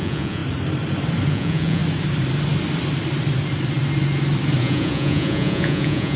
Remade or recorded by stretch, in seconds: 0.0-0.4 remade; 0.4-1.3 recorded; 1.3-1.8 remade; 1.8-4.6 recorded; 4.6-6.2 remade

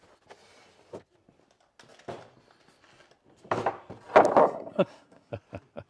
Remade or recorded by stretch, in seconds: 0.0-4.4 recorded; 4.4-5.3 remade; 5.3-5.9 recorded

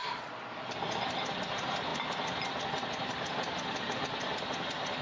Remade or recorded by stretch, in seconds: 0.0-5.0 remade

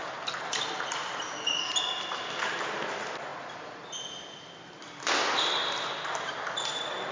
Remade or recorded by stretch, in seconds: 0.0-7.1 recorded

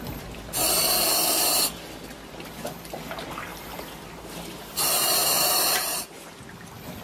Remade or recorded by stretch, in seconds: 0.0-3.5 recorded; 3.5-6.0 remade; 6.0-7.0 recorded

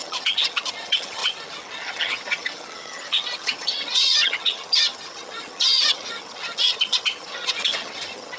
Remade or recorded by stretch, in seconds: 0.0-8.4 remade

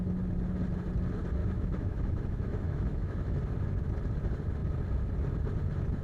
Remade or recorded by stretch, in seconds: 0.0-1.4 recorded; 1.4-3.4 remade; 3.4-6.0 recorded